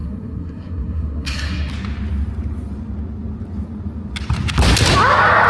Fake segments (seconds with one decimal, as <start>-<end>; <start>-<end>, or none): 0.0-1.7